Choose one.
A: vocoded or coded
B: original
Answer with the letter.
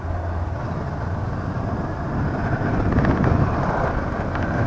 B